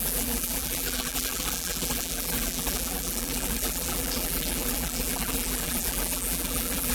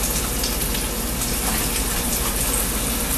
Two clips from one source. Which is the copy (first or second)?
first